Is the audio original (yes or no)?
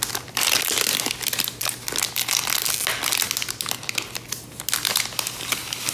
yes